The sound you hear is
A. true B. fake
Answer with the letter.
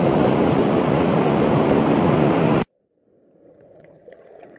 B